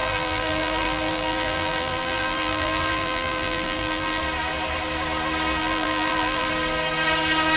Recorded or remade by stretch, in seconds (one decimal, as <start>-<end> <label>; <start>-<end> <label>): 0.0-4.2 remade; 4.2-5.6 recorded; 5.6-6.5 remade; 6.5-7.6 recorded